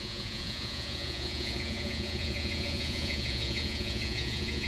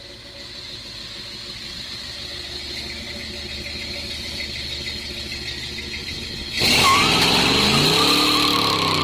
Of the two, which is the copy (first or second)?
first